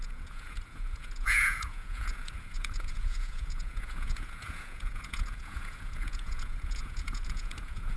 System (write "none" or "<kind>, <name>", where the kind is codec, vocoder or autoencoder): vocoder, Vocos